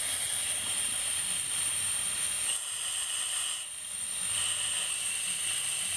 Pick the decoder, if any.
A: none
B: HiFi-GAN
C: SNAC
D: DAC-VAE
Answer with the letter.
A